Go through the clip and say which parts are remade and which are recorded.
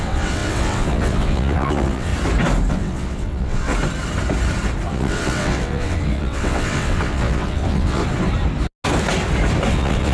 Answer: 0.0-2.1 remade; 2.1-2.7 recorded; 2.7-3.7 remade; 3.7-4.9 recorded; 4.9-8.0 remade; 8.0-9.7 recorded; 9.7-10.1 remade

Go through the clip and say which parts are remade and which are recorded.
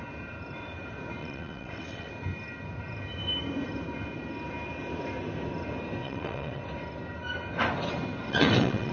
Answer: 0.0-1.2 recorded; 1.2-2.1 remade; 2.1-6.0 recorded; 6.0-6.6 remade; 6.6-8.3 recorded; 8.3-8.9 remade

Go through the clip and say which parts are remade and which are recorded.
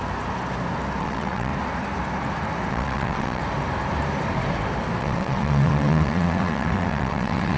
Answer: 0.0-1.0 recorded; 1.0-1.5 remade; 1.5-2.7 recorded; 2.7-3.4 remade; 3.4-5.0 recorded; 5.0-7.6 remade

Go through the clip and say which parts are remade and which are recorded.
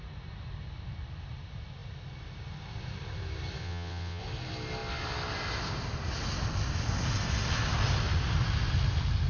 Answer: 0.0-3.6 recorded; 3.6-4.2 remade; 4.2-9.3 recorded